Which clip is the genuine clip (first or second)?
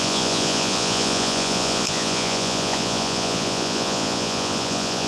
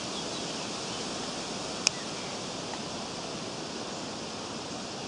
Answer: second